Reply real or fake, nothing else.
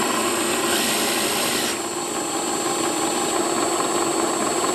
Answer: real